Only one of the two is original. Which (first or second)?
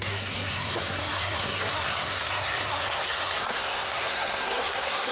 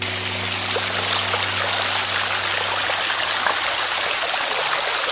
second